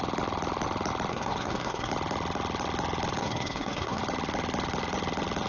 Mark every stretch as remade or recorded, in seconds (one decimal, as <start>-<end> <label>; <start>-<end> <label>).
0.0-1.1 recorded; 1.1-1.9 remade; 1.9-3.2 recorded; 3.2-4.0 remade; 4.0-5.5 recorded